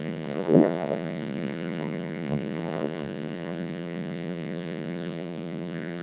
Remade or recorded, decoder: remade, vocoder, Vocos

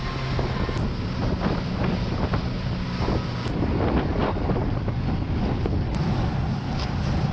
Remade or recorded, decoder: recorded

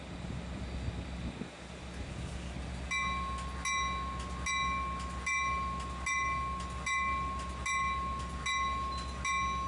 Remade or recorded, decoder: recorded